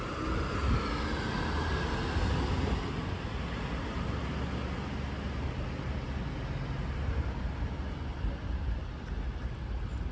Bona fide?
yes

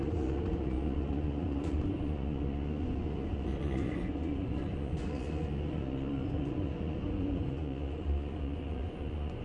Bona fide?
no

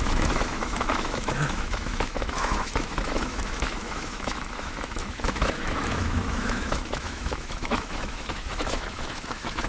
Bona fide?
no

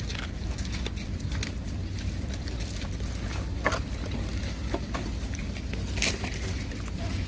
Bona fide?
yes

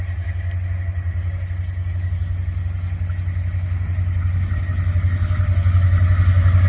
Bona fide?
yes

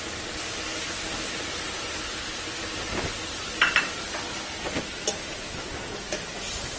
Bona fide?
yes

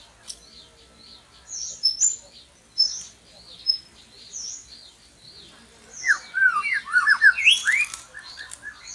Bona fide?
yes